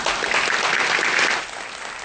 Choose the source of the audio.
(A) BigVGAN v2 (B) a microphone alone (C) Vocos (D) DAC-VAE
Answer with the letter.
B